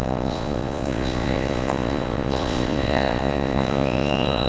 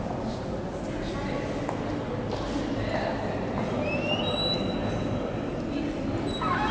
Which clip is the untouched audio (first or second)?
second